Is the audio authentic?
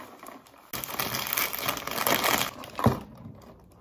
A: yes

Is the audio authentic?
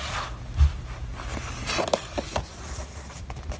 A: yes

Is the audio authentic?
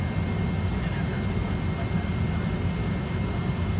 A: yes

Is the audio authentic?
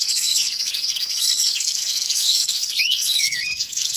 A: no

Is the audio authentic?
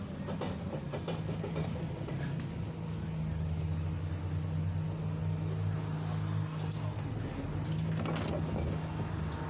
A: yes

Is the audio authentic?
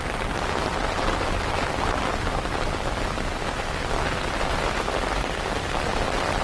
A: yes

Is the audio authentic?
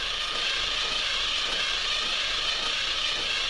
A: yes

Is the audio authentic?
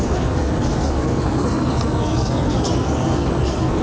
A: no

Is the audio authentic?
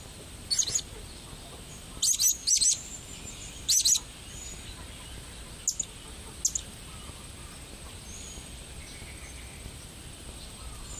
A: yes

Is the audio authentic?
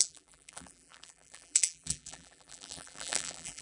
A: no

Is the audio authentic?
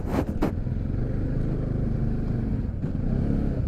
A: yes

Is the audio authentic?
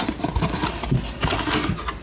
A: yes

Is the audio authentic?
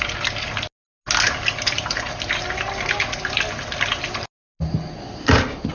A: yes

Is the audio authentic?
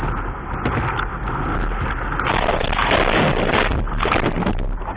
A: yes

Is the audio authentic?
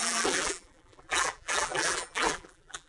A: no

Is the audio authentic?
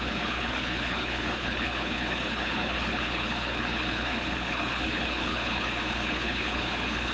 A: no